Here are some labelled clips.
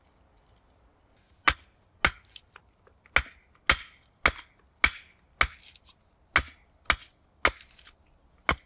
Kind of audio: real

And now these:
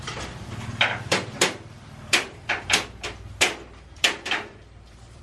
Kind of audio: fake